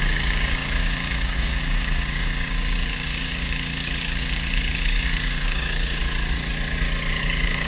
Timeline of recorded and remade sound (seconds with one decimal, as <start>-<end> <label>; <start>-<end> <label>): 0.0-6.0 remade; 6.0-7.2 recorded; 7.2-7.7 remade